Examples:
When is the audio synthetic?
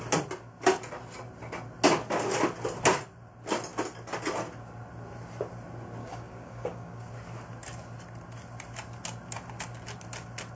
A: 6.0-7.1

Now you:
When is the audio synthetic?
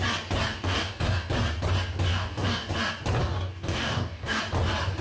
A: 0.5-1.3; 2.1-2.7; 3.2-4.4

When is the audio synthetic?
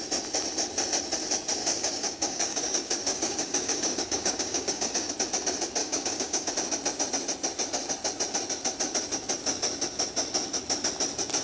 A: 1.6-5.1; 5.8-6.5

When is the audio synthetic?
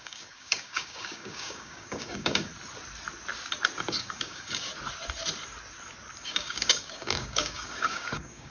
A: 0.0-2.5; 4.0-4.7; 6.2-8.5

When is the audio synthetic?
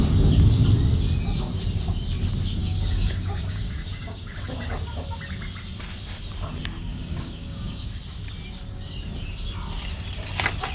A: 2.6-5.1; 6.9-7.9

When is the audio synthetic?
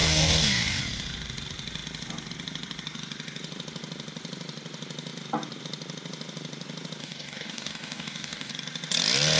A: 0.0-0.8; 7.0-8.5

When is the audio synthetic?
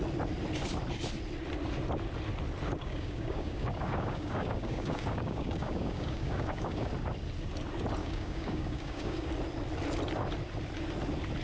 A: 2.8-6.9; 8.0-9.3